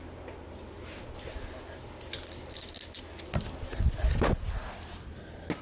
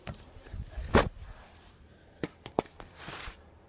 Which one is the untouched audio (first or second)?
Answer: first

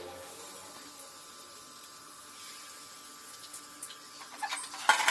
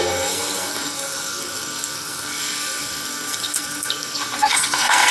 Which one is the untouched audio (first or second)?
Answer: first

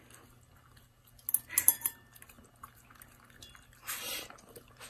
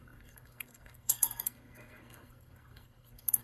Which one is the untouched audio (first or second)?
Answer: first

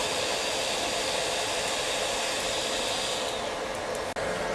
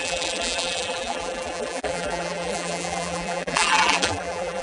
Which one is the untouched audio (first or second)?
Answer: first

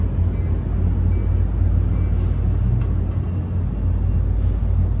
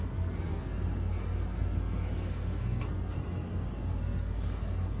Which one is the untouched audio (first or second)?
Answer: first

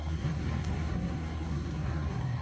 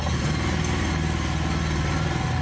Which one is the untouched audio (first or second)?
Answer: second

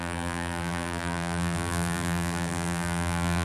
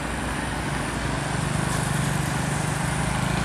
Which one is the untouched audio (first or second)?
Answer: second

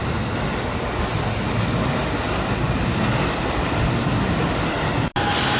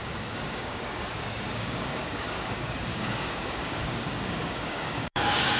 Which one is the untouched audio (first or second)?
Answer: first